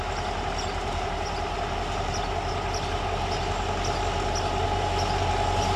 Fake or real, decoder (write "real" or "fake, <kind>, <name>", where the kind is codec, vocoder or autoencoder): real